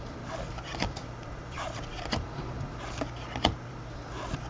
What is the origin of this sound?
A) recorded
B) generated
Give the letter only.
B